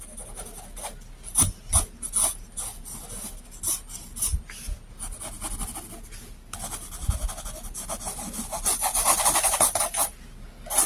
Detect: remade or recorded recorded